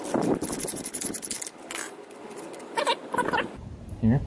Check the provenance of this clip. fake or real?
real